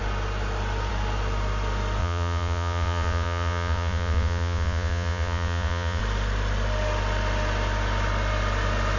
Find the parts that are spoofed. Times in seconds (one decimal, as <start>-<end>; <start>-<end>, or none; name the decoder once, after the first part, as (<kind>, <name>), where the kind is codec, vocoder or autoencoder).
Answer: 2.0-6.0 (vocoder, Vocos)